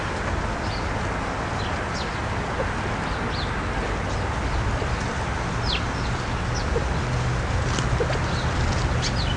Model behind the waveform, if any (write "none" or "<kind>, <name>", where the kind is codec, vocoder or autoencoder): none